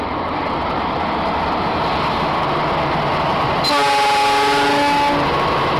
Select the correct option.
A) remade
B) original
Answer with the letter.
B